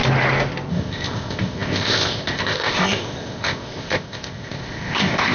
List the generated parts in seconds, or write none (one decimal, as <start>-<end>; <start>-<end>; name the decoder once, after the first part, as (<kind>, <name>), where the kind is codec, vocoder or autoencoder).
0.7-5.3 (codec, ZipCodec)